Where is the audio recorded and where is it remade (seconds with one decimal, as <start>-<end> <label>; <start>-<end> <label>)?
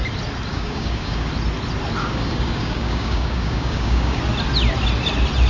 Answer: 0.0-0.5 recorded; 0.5-1.3 remade; 1.3-2.0 recorded; 2.0-4.2 remade; 4.2-5.5 recorded